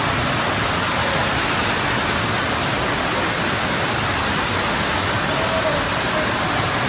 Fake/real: real